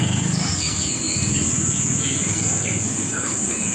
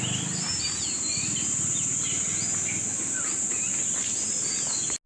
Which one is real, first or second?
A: second